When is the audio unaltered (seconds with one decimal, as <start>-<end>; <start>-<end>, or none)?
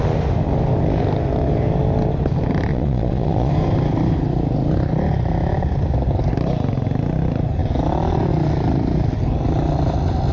0.0-2.7; 3.5-10.3